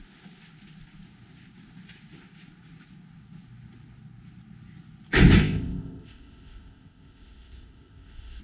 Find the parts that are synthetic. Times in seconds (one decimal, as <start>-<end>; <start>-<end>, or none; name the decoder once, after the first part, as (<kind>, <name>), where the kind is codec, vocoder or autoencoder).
5.4-8.4 (codec, ZipCodec)